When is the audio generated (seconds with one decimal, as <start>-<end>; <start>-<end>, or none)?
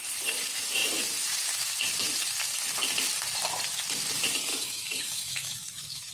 4.5-6.1